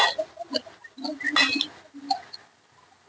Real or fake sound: real